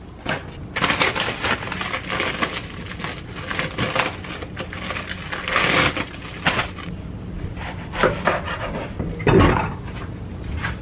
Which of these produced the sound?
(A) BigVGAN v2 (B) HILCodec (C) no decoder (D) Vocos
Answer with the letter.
C